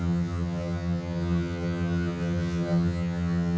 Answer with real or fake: fake